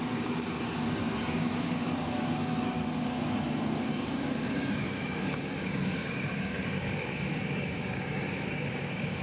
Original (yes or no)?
no